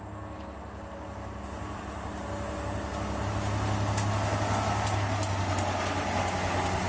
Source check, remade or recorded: recorded